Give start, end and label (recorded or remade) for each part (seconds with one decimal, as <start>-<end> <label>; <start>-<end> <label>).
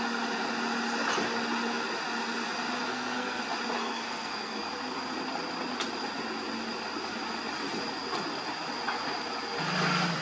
0.0-2.9 recorded; 2.9-3.4 remade; 3.4-3.8 recorded; 3.8-4.7 remade; 4.7-10.2 recorded